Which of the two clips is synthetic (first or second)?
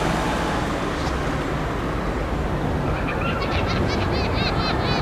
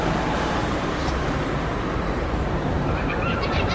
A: second